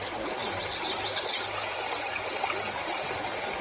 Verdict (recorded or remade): recorded